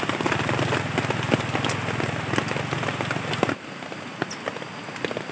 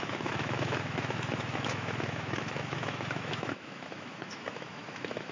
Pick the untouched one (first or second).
first